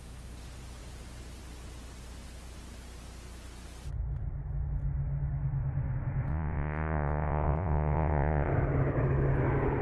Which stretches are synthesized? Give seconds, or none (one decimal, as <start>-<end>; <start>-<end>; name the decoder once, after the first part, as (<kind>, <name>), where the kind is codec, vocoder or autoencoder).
6.3-8.5 (vocoder, Vocos)